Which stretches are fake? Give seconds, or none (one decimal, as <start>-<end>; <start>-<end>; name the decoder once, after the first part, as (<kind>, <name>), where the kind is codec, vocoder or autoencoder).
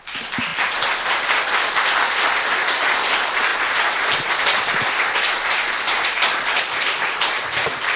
0.0-0.5 (vocoder, BigVGAN v2); 2.5-3.5; 6.6-8.0